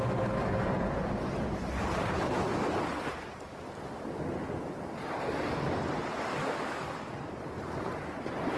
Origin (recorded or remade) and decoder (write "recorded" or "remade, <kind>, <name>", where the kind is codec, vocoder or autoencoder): recorded